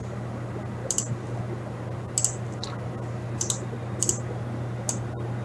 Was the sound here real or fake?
real